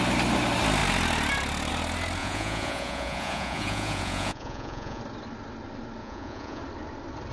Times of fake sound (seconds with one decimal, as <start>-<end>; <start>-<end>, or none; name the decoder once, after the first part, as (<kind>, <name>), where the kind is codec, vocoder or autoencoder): 2.2-5.0 (vocoder, Vocos); 6.0-6.6